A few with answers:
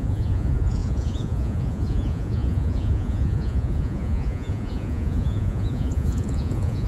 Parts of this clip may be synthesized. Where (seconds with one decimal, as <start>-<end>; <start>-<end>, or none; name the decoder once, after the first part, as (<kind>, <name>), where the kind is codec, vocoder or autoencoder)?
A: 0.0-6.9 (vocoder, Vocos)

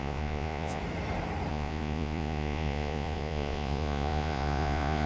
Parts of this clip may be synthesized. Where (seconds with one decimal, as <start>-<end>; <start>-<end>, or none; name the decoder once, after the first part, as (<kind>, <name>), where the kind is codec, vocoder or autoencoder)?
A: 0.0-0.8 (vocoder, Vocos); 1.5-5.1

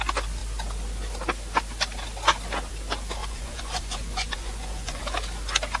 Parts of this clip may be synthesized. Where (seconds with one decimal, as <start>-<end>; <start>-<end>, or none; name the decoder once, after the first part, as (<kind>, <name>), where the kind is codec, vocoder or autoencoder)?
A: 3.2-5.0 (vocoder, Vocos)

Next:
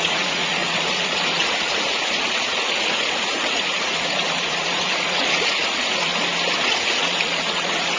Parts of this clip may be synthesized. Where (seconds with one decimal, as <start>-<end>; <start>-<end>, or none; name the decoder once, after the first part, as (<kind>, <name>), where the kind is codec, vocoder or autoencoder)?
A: 0.0-6.1 (vocoder, Vocos); 6.6-8.0

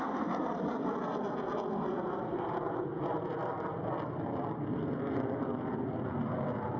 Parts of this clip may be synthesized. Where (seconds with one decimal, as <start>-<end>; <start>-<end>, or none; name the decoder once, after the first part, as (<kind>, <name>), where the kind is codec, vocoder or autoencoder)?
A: none

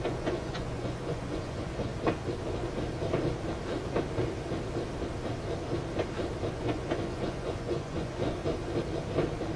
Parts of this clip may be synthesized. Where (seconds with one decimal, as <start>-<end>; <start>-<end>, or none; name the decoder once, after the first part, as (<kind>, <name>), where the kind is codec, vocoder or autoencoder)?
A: 0.0-1.9 (vocoder, Vocos); 6.5-8.4

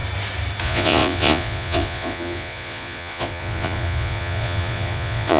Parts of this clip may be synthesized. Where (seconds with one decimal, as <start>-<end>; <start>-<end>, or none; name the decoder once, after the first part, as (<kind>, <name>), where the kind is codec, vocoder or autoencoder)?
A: 0.6-5.4 (vocoder, Vocos)

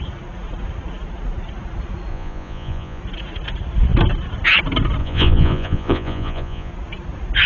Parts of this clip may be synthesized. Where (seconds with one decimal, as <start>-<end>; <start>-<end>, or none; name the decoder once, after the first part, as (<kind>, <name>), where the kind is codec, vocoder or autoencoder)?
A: 2.1-3.0 (vocoder, Vocos); 5.0-6.7